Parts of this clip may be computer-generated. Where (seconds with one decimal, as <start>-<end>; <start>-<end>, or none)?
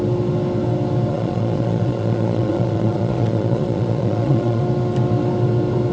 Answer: 1.1-4.6